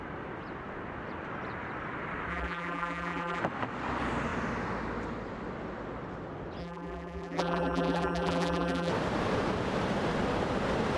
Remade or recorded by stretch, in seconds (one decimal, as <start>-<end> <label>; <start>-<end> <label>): 0.0-2.3 recorded; 2.3-3.4 remade; 3.4-6.6 recorded; 6.6-8.9 remade; 8.9-11.0 recorded